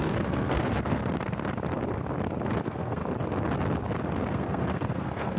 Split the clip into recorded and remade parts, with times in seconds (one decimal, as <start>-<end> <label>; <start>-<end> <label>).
0.0-1.0 remade; 1.0-2.6 recorded; 2.6-3.0 remade; 3.0-4.3 recorded; 4.3-5.4 remade